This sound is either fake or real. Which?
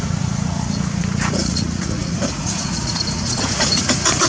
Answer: fake